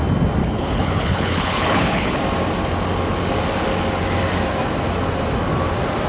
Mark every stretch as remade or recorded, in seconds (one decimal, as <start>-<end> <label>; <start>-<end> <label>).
0.0-0.4 recorded; 0.4-2.2 remade; 2.2-6.1 recorded